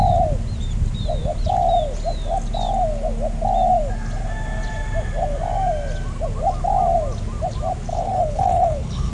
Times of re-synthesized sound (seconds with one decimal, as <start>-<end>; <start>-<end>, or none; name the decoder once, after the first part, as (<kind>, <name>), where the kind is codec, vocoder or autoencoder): 7.9-9.1 (codec, HILCodec)